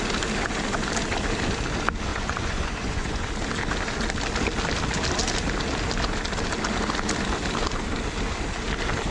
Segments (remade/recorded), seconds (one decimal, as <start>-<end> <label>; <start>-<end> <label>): 0.0-2.1 recorded; 2.1-3.3 remade; 3.3-9.1 recorded